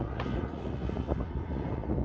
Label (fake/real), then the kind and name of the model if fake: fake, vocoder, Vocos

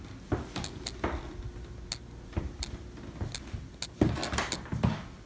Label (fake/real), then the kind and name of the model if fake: real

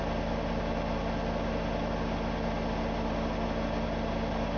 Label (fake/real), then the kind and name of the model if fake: real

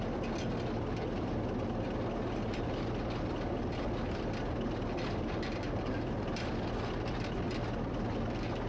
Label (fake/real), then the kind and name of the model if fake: real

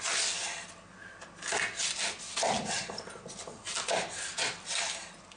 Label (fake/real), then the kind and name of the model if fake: real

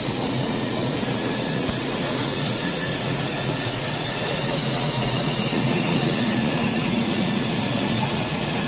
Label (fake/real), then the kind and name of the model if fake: fake, vocoder, Vocos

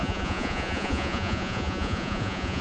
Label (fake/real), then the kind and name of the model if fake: fake, vocoder, Vocos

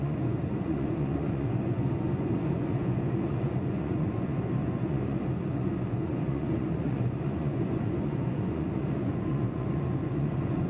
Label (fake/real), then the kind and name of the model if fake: fake, vocoder, Vocos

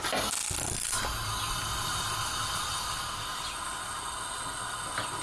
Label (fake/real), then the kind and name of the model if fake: real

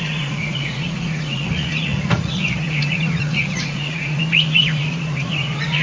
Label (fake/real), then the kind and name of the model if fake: fake, vocoder, Vocos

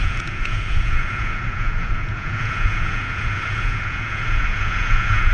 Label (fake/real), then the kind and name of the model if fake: fake, vocoder, Vocos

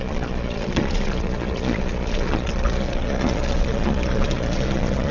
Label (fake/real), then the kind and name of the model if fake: fake, vocoder, Vocos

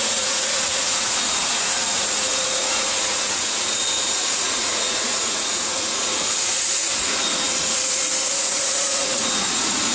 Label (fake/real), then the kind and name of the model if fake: fake, vocoder, Vocos